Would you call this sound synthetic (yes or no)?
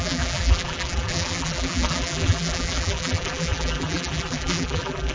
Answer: yes